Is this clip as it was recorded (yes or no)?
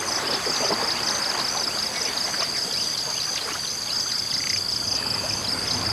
yes